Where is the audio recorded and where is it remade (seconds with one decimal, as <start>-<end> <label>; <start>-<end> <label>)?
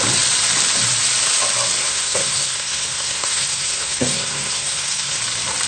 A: 0.0-1.8 recorded; 1.8-5.2 remade; 5.2-5.7 recorded